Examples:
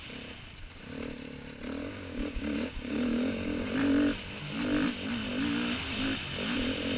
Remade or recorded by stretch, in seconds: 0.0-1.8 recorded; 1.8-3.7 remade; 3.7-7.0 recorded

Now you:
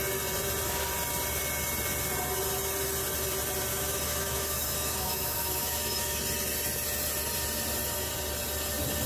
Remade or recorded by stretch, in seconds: 0.0-3.7 recorded; 3.7-6.2 remade; 6.2-9.1 recorded

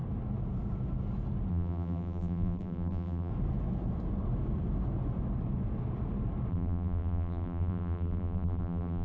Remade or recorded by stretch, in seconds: 0.0-1.5 recorded; 1.5-3.3 remade; 3.3-6.5 recorded; 6.5-9.0 remade

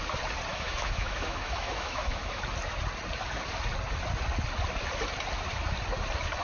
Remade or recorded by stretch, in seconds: 0.0-0.5 recorded; 0.5-2.4 remade; 2.4-6.4 recorded

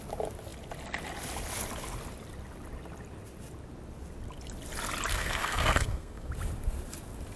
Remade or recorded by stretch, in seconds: 0.0-5.1 recorded; 5.1-6.3 remade; 6.3-7.4 recorded

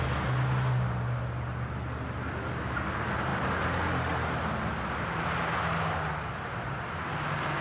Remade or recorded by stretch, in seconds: 0.0-7.6 recorded

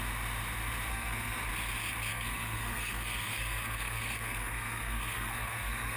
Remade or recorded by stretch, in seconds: 0.0-0.9 recorded; 0.9-1.5 remade; 1.5-2.1 recorded; 2.1-6.0 remade